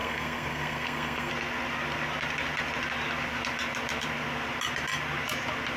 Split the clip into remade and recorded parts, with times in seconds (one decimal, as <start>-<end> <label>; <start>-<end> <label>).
0.0-1.3 remade; 1.3-5.8 recorded